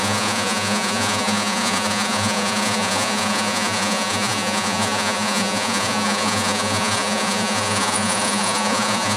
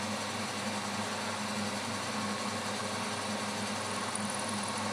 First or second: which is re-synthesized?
first